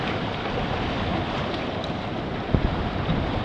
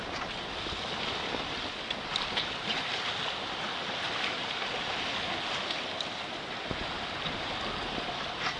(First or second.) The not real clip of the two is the first